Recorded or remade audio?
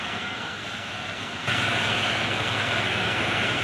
remade